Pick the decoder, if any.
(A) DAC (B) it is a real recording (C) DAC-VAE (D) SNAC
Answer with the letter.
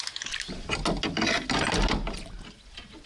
B